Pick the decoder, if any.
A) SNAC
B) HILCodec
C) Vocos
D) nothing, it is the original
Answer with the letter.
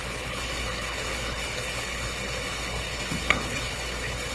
B